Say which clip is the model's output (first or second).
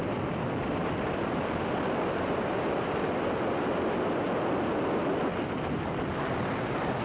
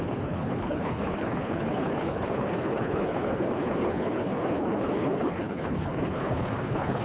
second